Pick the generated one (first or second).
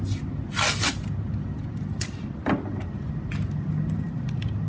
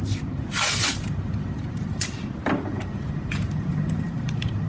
second